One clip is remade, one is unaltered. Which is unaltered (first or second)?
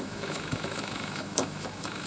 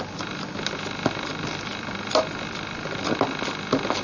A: second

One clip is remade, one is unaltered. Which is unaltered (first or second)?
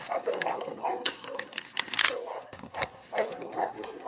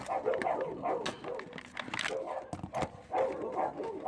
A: second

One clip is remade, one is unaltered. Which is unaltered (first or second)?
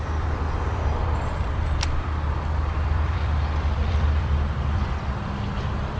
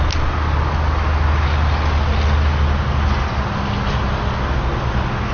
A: second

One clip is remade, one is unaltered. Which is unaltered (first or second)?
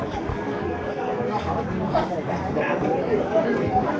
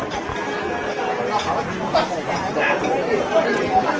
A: second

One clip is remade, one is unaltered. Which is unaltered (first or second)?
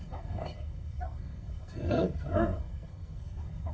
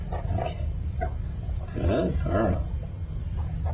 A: second